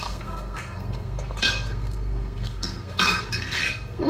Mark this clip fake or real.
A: fake